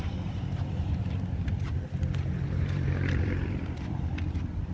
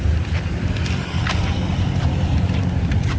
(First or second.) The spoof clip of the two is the first